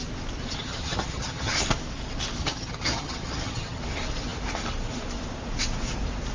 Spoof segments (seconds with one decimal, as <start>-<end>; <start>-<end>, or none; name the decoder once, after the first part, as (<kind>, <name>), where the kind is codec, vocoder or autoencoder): 0.6-1.5 (vocoder, HiFi-GAN); 2.4-3.8